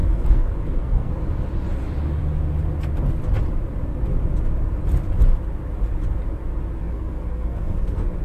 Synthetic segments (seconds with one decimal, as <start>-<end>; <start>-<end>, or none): 0.0-1.1; 6.8-8.2